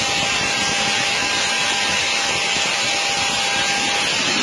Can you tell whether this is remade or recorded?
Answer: recorded